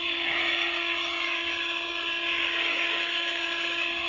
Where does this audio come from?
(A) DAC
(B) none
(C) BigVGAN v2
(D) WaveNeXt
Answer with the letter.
A